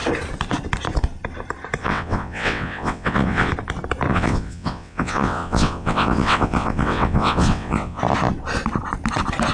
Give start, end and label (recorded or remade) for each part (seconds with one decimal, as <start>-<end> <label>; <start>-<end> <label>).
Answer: 0.0-1.8 recorded; 1.8-3.5 remade; 3.5-4.1 recorded; 4.1-8.0 remade; 8.0-9.5 recorded